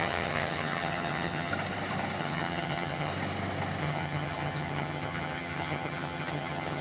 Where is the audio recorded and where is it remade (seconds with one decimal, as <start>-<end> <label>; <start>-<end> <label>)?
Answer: 0.0-1.5 remade; 1.5-2.2 recorded; 2.2-3.1 remade; 3.1-3.8 recorded; 3.8-6.8 remade